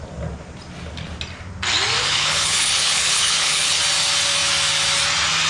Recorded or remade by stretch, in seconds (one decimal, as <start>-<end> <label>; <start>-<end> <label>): 0.0-2.0 recorded; 2.0-3.8 remade; 3.8-5.5 recorded